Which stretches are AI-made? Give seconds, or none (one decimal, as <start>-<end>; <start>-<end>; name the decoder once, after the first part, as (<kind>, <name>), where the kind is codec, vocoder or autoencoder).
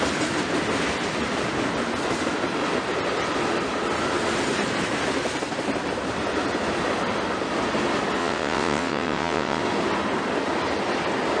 8.2-9.6 (vocoder, WaveNeXt)